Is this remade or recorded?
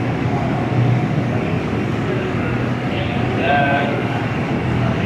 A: remade